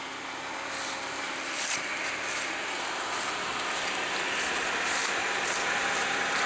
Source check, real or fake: fake